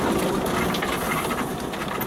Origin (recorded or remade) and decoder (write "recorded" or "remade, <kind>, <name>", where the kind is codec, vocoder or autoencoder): recorded